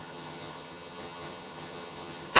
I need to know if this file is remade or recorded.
remade